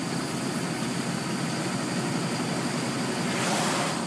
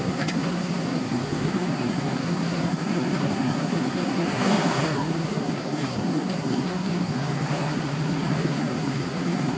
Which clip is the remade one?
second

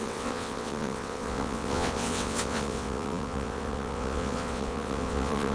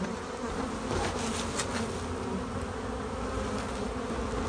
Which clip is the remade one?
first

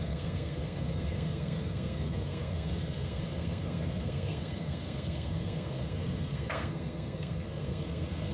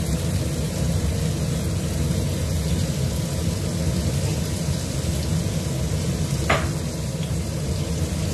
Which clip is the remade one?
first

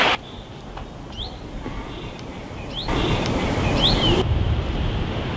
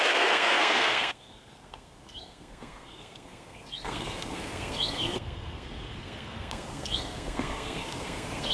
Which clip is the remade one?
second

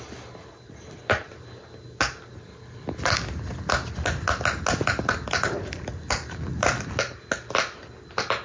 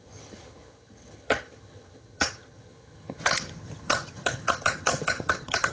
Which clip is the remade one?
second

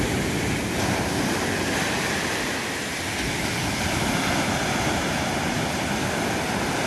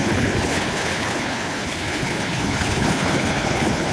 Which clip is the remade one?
second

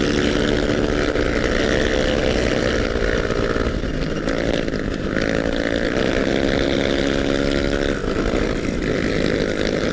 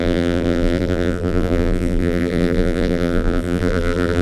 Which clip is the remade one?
second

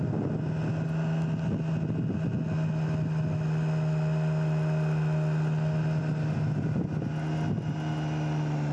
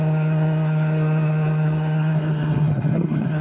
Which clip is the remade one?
second